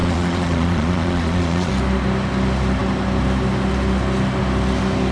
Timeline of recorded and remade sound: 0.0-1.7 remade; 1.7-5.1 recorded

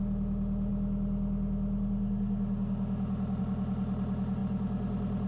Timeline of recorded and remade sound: 0.0-5.3 recorded

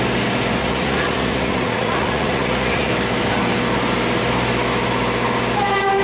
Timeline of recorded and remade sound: 0.0-0.6 recorded; 0.6-2.9 remade; 2.9-6.0 recorded

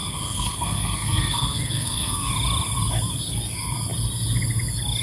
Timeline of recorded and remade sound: 0.0-2.3 remade; 2.3-5.0 recorded

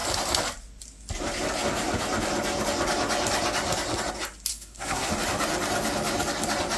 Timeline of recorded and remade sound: 0.0-4.5 recorded; 4.5-5.1 remade; 5.1-6.8 recorded